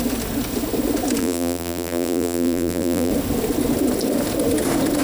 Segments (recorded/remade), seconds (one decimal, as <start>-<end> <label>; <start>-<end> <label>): 0.0-1.2 recorded; 1.2-3.1 remade; 3.1-5.0 recorded